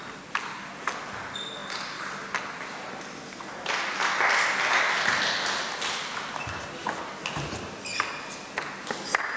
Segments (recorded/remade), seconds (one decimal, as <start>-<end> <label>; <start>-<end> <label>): 0.0-9.4 recorded